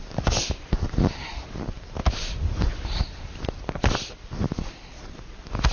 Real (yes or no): yes